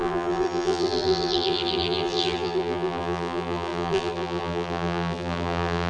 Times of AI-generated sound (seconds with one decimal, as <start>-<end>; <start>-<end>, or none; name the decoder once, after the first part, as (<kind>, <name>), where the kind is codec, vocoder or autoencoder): 0.0-5.9 (vocoder, BigVGAN v2)